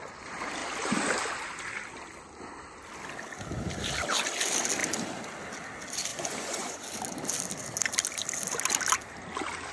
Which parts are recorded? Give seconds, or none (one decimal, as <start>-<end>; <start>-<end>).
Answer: 0.0-6.1; 6.8-9.7